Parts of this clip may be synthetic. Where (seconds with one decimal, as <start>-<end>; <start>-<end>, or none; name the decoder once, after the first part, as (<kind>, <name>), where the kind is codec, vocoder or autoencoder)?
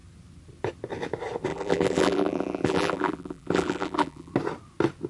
1.5-4.3 (vocoder, BigVGAN v2)